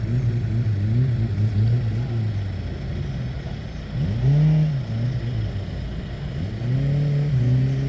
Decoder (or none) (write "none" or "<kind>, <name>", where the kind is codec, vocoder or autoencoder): none